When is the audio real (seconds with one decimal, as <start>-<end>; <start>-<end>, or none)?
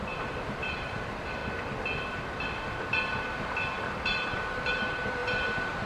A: 1.4-3.7